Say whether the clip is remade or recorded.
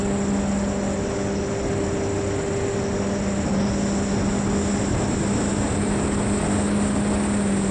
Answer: recorded